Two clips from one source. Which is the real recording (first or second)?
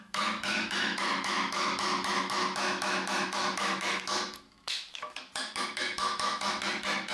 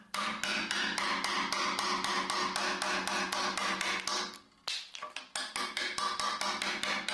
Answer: second